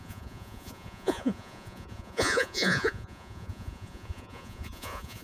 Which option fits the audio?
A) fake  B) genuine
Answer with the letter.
A